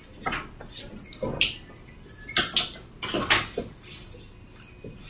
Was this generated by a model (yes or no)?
no